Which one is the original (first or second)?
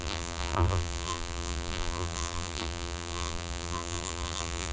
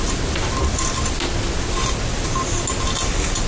second